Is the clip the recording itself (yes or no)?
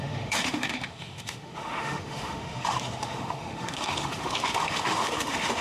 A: no